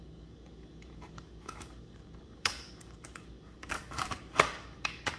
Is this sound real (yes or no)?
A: no